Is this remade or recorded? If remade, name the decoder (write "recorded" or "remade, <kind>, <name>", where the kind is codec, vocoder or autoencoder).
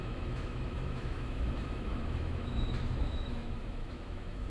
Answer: remade, autoencoder, DAC-VAE